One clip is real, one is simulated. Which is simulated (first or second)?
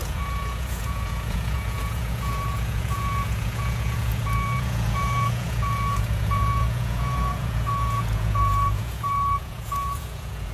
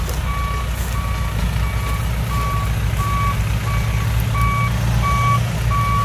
first